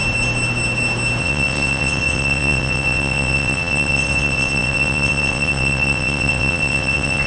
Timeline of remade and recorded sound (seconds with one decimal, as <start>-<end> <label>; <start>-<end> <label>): 0.0-1.2 recorded; 1.2-7.3 remade